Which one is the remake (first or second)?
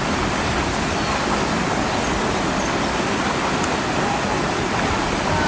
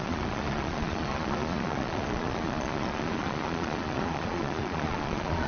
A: second